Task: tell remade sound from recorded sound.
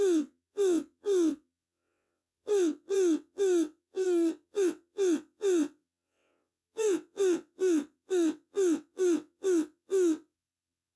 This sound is remade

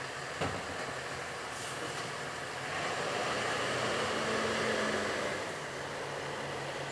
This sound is recorded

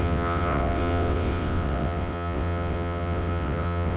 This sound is remade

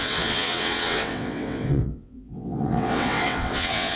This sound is remade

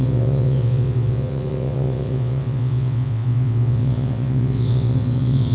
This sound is remade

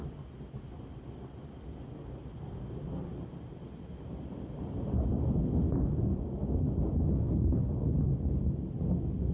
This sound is recorded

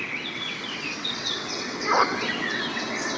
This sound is remade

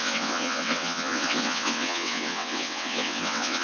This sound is remade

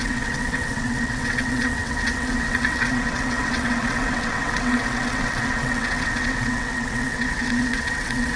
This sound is remade